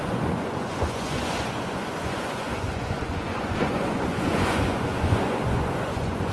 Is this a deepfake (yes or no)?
yes